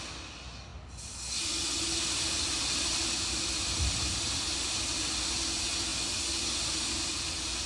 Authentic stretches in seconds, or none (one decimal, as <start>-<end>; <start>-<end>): 0.0-7.7